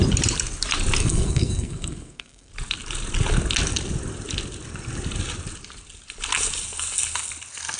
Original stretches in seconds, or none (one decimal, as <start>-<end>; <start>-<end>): 0.0-1.0; 2.5-7.8